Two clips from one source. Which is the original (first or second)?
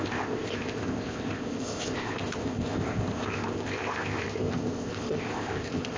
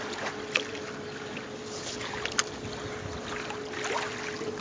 second